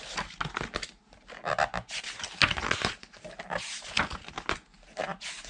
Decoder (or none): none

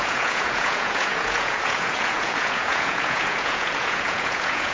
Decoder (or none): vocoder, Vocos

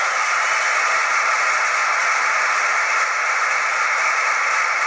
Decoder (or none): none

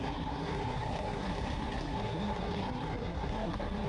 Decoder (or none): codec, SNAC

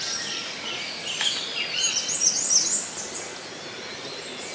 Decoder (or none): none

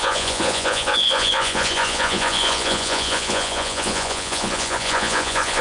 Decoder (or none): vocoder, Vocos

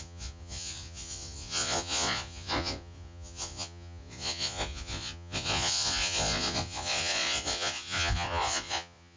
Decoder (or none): vocoder, Vocos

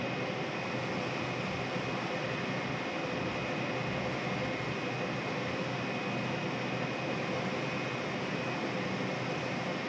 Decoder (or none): none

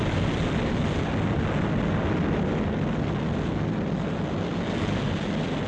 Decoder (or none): none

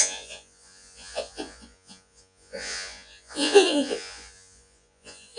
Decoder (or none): vocoder, Vocos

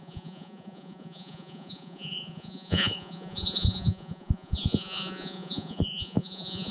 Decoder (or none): vocoder, Vocos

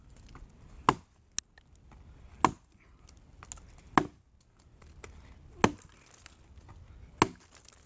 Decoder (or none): none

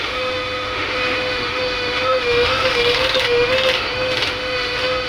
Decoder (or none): autoencoder, DAC-VAE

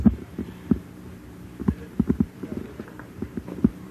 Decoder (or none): vocoder, BigVGAN v2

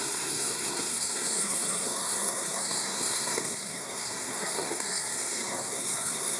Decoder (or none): codec, SNAC